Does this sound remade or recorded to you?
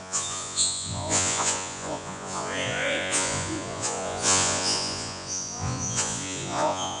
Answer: remade